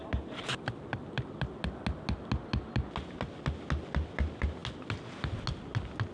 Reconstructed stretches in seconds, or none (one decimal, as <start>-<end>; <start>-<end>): none